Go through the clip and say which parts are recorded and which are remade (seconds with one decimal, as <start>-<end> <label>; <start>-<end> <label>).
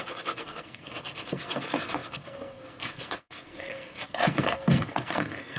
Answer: 0.0-5.6 remade